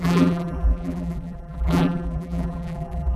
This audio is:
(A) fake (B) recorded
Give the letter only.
A